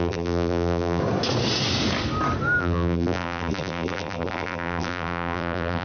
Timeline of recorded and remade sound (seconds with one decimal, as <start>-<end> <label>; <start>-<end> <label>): 0.0-1.0 remade; 1.0-2.6 recorded; 2.6-5.8 remade